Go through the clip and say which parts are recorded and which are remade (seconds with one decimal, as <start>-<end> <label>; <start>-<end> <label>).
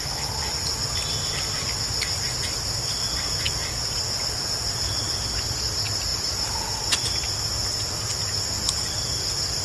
0.0-3.6 recorded; 3.6-4.2 remade; 4.2-6.1 recorded; 6.1-7.2 remade; 7.2-9.6 recorded